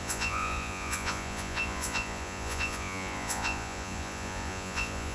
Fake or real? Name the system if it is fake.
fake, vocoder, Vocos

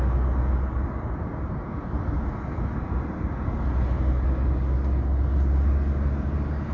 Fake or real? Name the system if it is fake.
real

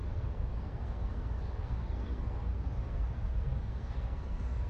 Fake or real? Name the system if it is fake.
fake, codec, SNAC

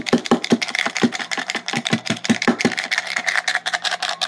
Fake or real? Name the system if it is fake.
fake, vocoder, BigVGAN v2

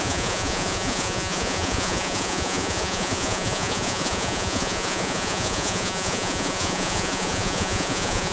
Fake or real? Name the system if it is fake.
fake, vocoder, Vocos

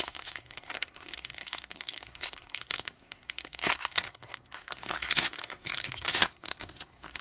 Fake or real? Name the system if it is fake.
fake, codec, SNAC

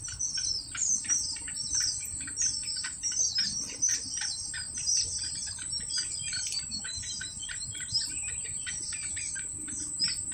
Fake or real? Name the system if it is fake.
real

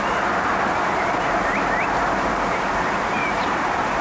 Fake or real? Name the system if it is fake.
fake, vocoder, BigVGAN v2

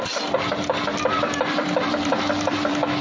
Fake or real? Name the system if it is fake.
fake, vocoder, BigVGAN v2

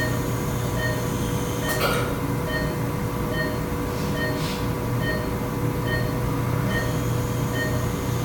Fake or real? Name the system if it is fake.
real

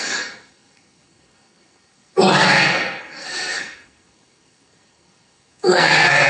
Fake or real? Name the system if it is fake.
fake, codec, SNAC